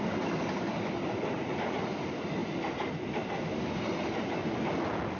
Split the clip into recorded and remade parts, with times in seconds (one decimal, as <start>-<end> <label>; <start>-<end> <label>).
0.0-5.2 recorded